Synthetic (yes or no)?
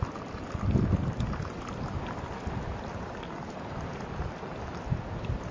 no